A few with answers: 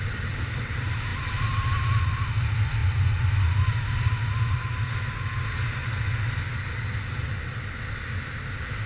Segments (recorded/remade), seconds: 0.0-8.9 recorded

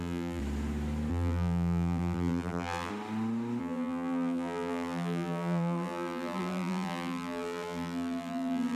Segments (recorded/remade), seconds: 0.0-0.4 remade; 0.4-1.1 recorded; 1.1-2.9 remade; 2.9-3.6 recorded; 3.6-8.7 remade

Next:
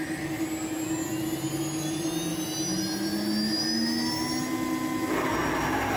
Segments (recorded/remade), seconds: 0.0-6.0 recorded

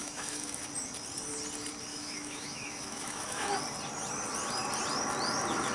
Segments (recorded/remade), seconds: 0.0-0.6 remade; 0.6-1.9 recorded; 1.9-3.5 remade; 3.5-5.7 recorded

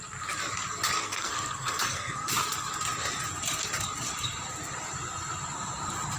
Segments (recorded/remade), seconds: 0.0-1.0 recorded; 1.0-2.3 remade; 2.3-6.2 recorded